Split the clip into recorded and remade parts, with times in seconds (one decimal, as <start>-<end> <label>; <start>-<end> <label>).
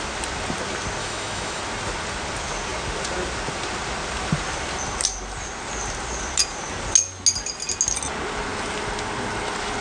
0.0-1.0 recorded; 1.0-1.6 remade; 1.6-9.8 recorded